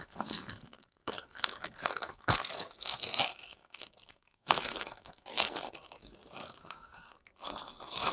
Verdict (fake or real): fake